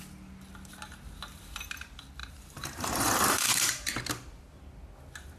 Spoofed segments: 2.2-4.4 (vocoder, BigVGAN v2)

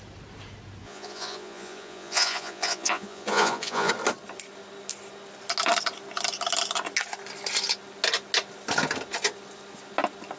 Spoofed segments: 0.8-3.9 (vocoder, Vocos)

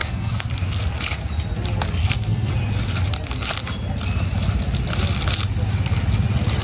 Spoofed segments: 0.0-0.5 (codec, SNAC); 2.0-2.5